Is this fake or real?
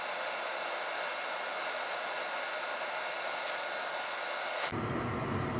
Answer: real